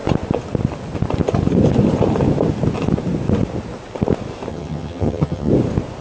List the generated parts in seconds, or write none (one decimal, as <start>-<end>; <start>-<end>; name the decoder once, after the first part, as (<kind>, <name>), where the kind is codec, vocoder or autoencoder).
4.5-5.5 (vocoder, HiFi-GAN)

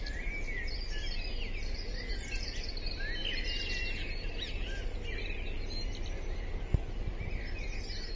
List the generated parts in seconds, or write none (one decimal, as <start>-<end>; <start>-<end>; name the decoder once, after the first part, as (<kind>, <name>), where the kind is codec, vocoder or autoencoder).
none

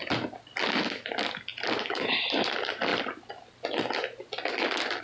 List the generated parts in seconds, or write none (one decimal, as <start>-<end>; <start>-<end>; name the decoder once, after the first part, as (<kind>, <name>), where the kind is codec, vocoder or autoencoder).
none

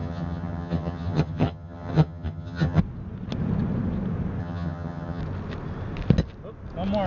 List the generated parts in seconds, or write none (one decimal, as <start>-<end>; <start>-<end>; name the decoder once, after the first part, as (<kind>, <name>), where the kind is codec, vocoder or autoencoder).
0.0-2.8 (vocoder, HiFi-GAN); 4.4-5.2